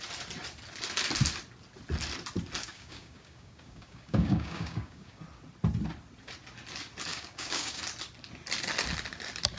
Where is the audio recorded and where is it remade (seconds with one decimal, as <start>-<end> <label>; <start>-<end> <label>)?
0.0-2.6 recorded; 2.6-5.2 remade; 5.2-7.1 recorded; 7.1-7.8 remade; 7.8-9.6 recorded